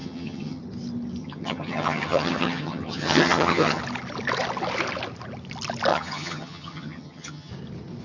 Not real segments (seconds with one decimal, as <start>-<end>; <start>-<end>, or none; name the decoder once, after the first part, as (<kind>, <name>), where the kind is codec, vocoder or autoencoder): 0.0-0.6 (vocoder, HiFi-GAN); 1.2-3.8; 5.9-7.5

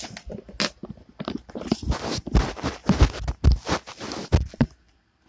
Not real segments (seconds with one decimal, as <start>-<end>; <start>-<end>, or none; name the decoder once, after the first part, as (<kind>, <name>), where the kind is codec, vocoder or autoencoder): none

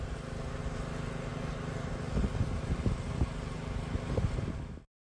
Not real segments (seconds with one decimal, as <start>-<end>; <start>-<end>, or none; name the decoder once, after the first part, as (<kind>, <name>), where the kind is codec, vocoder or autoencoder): 0.0-5.1 (vocoder, BigVGAN v2)